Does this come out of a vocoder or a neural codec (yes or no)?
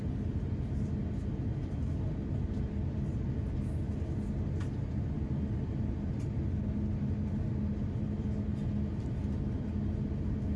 no